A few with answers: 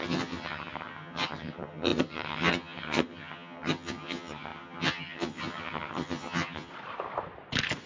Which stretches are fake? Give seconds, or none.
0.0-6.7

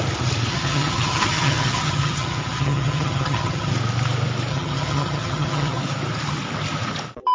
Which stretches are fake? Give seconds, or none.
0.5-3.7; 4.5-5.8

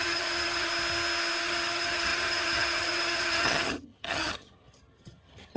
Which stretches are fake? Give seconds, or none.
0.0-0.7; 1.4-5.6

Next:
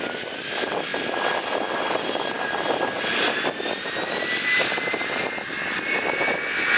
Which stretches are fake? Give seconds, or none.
none

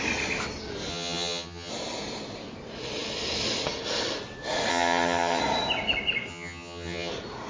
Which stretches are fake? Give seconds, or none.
0.9-1.7; 4.7-5.4; 6.3-7.1

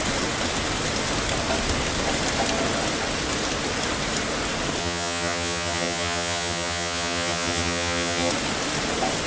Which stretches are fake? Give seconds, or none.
4.8-8.3

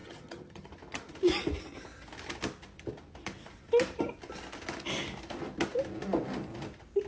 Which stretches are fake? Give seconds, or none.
0.0-0.7